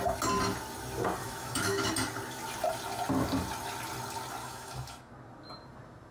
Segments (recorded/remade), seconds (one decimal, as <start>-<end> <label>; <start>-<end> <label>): 0.0-1.2 recorded; 1.2-1.9 remade; 1.9-4.4 recorded; 4.4-5.1 remade; 5.1-6.1 recorded